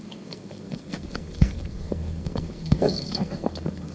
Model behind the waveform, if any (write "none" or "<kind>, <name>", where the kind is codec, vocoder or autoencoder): codec, SNAC